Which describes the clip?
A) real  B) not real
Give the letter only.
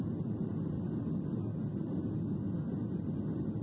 A